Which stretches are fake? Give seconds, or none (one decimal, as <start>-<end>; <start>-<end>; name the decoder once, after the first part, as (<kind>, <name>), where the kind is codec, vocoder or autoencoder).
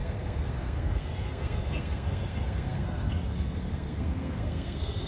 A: 0.0-5.1 (codec, SNAC)